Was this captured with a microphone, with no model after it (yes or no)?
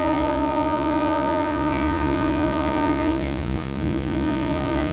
no